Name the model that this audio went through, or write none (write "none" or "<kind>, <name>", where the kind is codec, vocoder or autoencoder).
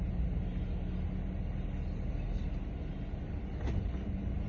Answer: none